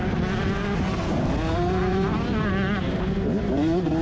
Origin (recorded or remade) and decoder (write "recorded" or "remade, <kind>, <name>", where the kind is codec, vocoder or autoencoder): recorded